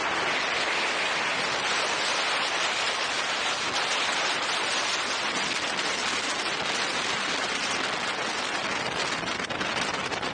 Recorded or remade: recorded